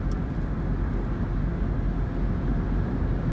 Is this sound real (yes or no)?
yes